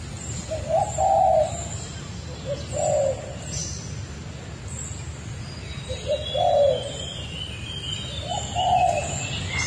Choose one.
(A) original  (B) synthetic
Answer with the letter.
A